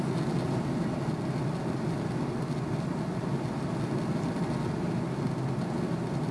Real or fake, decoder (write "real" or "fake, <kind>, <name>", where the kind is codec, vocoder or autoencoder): real